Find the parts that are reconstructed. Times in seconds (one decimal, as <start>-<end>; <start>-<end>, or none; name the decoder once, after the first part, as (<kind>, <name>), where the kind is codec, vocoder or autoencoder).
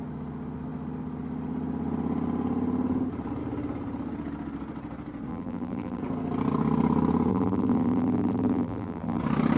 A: 5.3-6.0 (vocoder, BigVGAN v2); 7.3-9.2